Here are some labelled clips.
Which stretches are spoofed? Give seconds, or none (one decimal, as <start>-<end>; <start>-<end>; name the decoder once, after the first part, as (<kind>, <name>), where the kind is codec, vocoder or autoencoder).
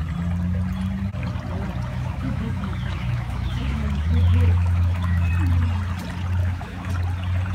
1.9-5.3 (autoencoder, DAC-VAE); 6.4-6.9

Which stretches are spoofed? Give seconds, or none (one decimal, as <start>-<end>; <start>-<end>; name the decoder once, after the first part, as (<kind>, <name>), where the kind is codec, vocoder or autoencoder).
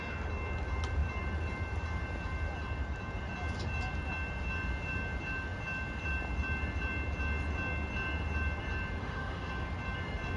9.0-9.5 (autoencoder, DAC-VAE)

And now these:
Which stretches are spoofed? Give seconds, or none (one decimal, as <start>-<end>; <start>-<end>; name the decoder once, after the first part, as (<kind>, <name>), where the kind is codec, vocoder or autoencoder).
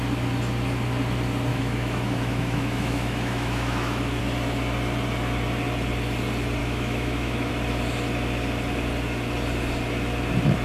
1.5-4.2 (autoencoder, DAC-VAE); 6.6-7.5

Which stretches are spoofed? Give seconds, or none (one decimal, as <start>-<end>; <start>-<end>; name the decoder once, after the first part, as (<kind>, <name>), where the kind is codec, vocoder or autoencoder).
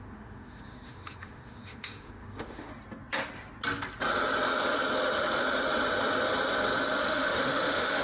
0.0-2.7 (autoencoder, DAC-VAE); 7.0-8.0